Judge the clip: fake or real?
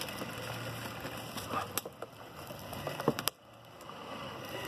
real